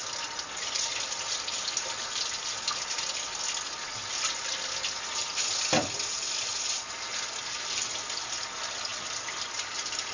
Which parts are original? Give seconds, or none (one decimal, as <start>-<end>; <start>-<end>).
0.0-10.1